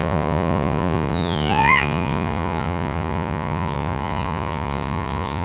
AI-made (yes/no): yes